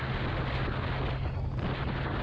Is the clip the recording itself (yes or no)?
yes